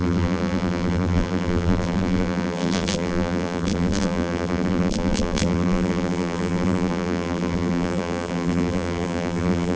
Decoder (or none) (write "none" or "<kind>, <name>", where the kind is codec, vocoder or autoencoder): vocoder, BigVGAN v2